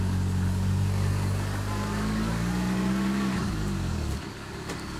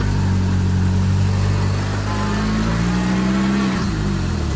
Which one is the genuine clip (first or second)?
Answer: second